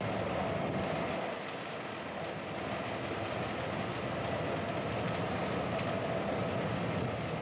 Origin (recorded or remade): recorded